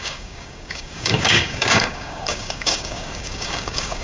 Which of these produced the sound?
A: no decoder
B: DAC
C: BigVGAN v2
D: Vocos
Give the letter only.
B